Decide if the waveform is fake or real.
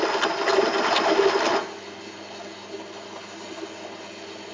real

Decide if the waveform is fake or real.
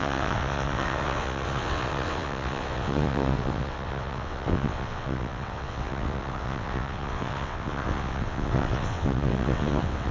fake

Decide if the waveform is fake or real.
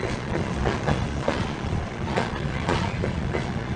fake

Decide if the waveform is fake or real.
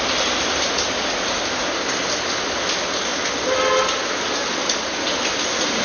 real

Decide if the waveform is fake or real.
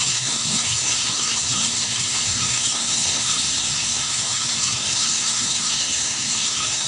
fake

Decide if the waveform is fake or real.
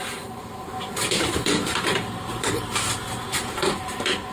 fake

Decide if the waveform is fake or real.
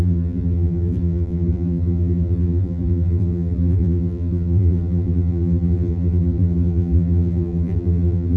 fake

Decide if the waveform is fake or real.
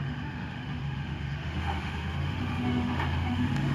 fake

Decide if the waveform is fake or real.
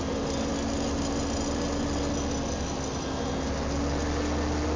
real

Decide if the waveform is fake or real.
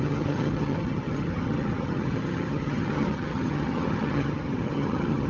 fake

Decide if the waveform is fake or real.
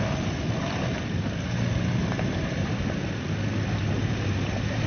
real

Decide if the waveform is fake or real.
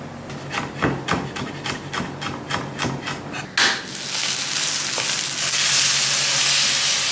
real